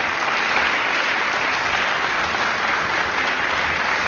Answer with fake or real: real